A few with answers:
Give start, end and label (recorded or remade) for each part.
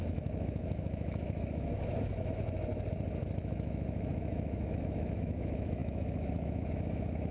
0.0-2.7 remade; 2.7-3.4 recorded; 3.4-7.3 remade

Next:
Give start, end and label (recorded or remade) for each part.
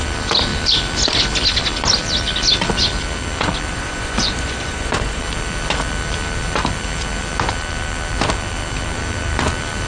0.0-3.7 recorded; 3.7-5.2 remade; 5.2-9.9 recorded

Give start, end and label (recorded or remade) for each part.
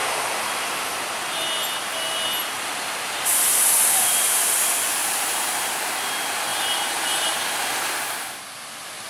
0.0-0.6 remade; 0.6-5.0 recorded; 5.0-5.5 remade; 5.5-6.5 recorded; 6.5-7.4 remade; 7.4-9.1 recorded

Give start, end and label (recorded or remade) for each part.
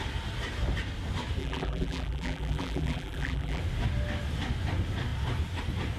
0.0-1.4 recorded; 1.4-3.6 remade; 3.6-6.0 recorded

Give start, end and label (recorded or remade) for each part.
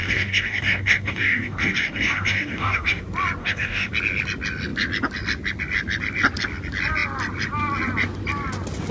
0.0-3.0 remade; 3.0-3.4 recorded; 3.4-3.9 remade; 3.9-8.9 recorded